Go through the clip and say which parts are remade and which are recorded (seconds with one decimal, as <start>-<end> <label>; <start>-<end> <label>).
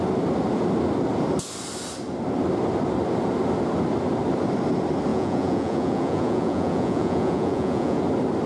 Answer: 0.0-5.1 recorded; 5.1-8.0 remade; 8.0-8.5 recorded